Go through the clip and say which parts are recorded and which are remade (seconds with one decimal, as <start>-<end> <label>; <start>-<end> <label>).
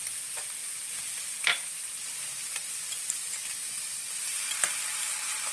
0.0-0.6 recorded; 0.6-1.4 remade; 1.4-4.3 recorded; 4.3-5.1 remade; 5.1-5.5 recorded